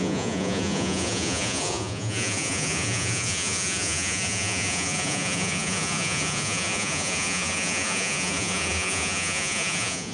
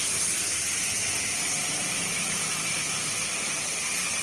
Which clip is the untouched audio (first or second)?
second